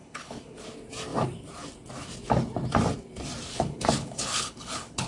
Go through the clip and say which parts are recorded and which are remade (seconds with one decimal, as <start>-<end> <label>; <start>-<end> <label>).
0.0-0.6 remade; 0.6-3.5 recorded; 3.5-5.1 remade